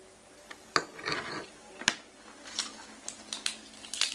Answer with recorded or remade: recorded